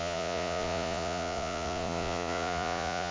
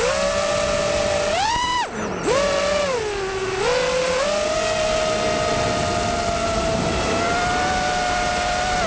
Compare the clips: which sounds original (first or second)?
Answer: second